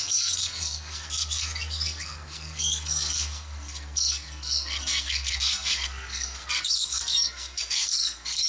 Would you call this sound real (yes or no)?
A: no